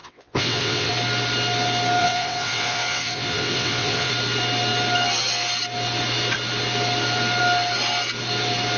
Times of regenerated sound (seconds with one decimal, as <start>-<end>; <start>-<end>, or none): 0.0-0.9; 2.0-4.1